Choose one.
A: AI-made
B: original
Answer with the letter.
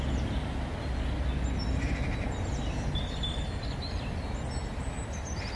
B